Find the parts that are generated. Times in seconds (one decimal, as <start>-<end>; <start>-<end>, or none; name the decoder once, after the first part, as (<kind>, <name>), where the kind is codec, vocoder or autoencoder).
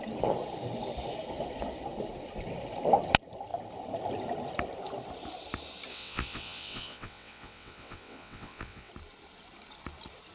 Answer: 5.9-8.9 (vocoder, WaveNeXt)